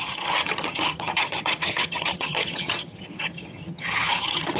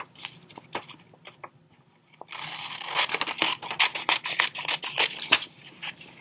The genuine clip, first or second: second